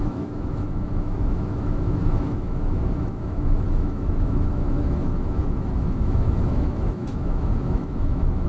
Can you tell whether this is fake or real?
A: fake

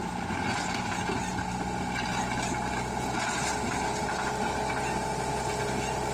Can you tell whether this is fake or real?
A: real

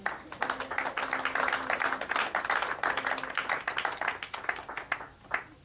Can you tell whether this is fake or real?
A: real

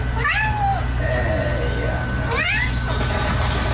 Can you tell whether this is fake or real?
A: real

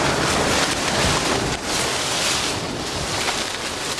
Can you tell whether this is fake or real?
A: real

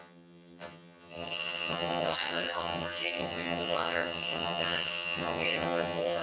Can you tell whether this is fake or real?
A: fake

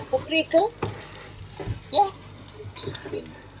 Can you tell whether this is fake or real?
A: real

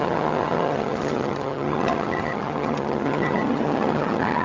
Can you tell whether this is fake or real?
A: fake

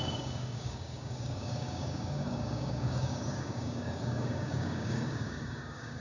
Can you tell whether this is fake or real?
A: fake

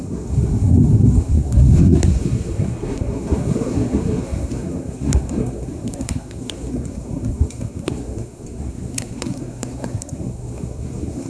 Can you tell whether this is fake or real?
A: fake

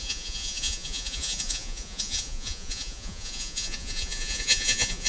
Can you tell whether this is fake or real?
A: fake